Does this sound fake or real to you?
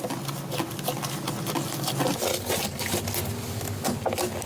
real